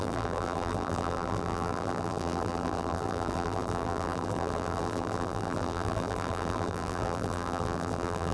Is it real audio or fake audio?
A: fake